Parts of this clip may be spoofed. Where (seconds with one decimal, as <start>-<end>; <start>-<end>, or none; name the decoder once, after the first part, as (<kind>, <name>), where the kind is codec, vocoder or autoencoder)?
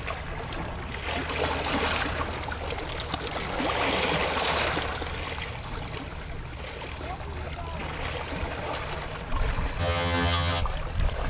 9.8-10.6 (vocoder, HiFi-GAN)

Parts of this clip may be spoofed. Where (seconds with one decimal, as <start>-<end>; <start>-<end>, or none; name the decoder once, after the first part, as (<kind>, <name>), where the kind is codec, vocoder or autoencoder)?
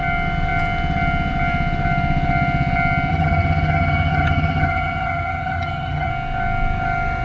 3.1-6.1 (vocoder, HiFi-GAN)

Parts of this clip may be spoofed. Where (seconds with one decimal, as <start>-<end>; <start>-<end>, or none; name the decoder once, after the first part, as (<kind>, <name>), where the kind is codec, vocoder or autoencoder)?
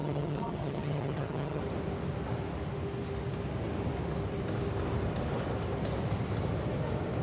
0.0-1.6 (vocoder, HiFi-GAN)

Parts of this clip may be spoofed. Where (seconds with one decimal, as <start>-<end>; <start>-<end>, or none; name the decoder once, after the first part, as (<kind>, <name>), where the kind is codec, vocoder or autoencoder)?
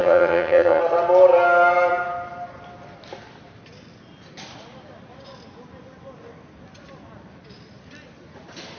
0.0-0.8 (vocoder, HiFi-GAN)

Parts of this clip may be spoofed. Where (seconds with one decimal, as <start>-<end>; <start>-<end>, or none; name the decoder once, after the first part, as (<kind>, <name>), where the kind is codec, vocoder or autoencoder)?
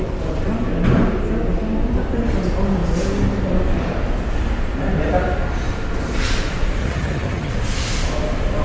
6.8-7.5 (vocoder, HiFi-GAN)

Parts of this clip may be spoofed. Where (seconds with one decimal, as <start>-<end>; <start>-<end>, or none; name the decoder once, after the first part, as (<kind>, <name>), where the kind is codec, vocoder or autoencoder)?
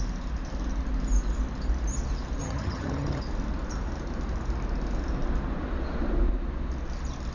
2.4-3.2 (vocoder, HiFi-GAN)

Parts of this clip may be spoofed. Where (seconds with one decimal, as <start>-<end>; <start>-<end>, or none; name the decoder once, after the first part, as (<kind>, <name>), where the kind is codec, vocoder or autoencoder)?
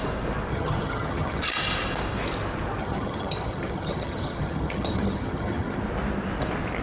0.5-1.4 (vocoder, HiFi-GAN); 2.8-5.8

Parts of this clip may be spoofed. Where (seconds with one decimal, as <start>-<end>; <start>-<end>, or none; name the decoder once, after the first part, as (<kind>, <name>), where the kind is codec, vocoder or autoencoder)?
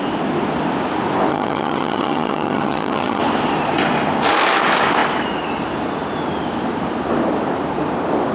1.3-3.2 (vocoder, HiFi-GAN)